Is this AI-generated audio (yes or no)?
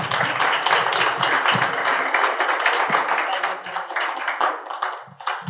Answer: no